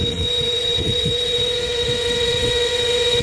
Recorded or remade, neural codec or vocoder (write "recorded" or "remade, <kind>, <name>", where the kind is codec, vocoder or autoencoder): remade, vocoder, WaveNeXt